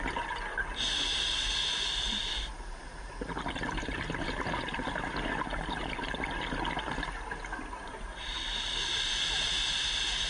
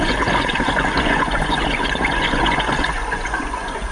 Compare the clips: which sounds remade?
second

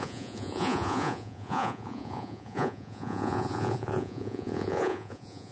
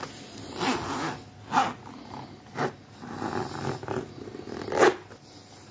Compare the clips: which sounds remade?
first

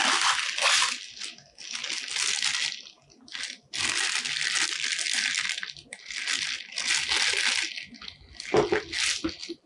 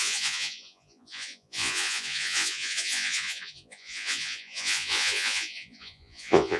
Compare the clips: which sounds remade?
second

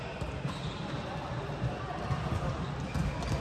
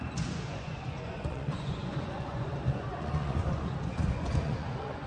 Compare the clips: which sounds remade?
second